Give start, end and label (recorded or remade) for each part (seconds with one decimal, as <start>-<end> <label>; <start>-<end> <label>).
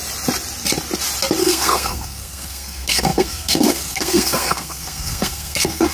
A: 0.0-1.4 recorded; 1.4-5.9 remade